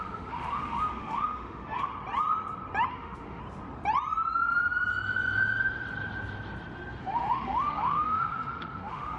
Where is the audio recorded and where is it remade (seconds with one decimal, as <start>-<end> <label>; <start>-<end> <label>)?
0.0-1.9 remade; 1.9-2.9 recorded; 2.9-3.4 remade; 3.4-7.0 recorded; 7.0-9.2 remade

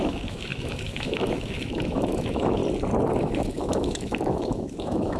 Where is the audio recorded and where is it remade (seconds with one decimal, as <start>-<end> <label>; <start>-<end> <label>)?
0.0-2.6 remade; 2.6-3.1 recorded; 3.1-5.2 remade

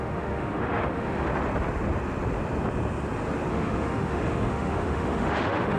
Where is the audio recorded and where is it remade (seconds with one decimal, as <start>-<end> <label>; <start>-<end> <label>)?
0.0-1.3 remade; 1.3-3.5 recorded; 3.5-5.8 remade

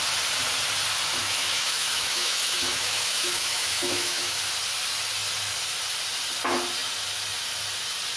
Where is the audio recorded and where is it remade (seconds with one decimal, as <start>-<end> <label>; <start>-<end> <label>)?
0.0-1.2 recorded; 1.2-4.4 remade; 4.4-8.2 recorded

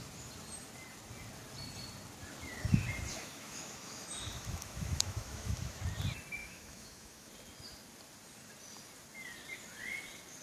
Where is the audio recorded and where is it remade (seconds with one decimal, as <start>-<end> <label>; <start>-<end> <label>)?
0.0-3.1 recorded; 3.1-5.8 remade; 5.8-6.4 recorded; 6.4-7.3 remade; 7.3-10.4 recorded

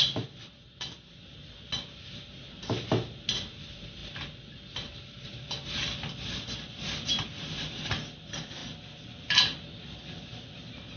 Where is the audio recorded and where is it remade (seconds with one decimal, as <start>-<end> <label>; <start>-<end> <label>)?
0.0-11.0 recorded